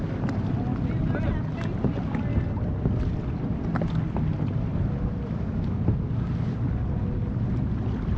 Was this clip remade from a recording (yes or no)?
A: no